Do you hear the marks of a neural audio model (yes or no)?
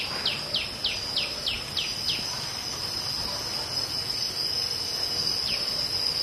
no